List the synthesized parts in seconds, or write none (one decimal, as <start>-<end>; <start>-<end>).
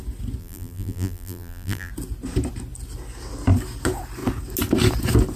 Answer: 0.4-1.9